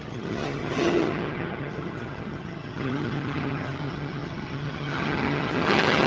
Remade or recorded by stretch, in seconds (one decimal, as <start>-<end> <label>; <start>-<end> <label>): 0.0-6.1 remade